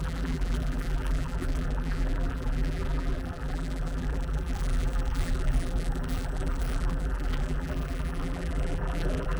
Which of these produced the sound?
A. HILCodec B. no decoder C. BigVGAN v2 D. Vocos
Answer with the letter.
C